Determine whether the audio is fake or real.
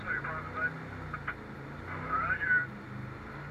real